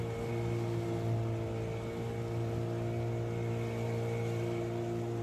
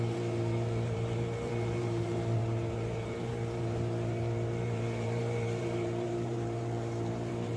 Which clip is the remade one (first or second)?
second